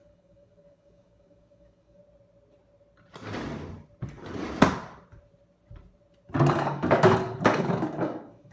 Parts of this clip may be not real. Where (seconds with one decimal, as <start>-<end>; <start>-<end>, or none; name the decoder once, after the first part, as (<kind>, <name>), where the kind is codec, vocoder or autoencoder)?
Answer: 0.0-2.0 (codec, DAC); 6.5-8.5